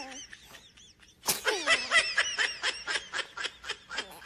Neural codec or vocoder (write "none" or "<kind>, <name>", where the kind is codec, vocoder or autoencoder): none